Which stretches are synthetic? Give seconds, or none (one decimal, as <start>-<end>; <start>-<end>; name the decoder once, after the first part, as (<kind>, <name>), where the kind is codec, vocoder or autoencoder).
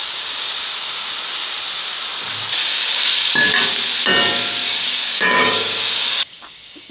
0.0-0.5 (codec, DAC); 2.6-3.3; 4.6-6.9